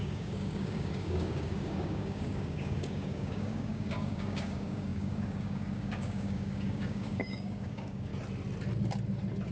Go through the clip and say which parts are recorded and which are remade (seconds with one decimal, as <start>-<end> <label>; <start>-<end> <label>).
0.0-8.1 remade; 8.1-9.5 recorded